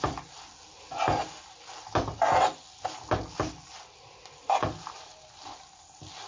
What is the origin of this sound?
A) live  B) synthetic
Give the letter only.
A